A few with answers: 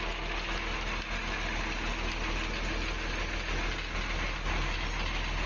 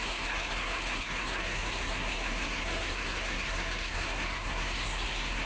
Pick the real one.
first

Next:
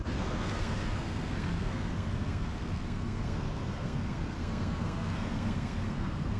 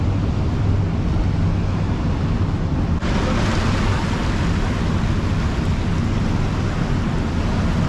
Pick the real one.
second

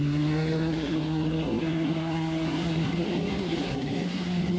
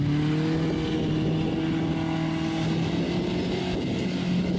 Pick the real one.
second